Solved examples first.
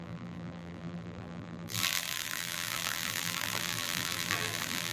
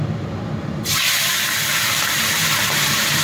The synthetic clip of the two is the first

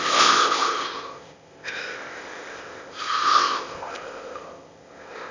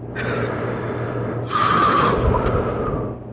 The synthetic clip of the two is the first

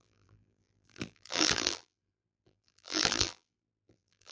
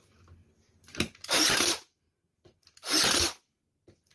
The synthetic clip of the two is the first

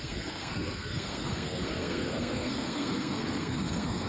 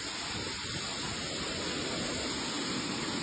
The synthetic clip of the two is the first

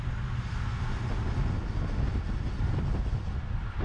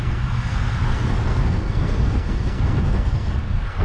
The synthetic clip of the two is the second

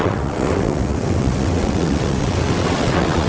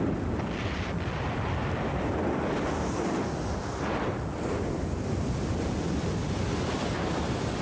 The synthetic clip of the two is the first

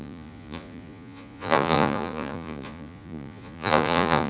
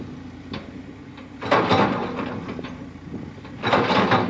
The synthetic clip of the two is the first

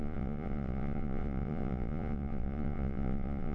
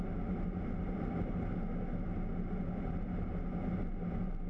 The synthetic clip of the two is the first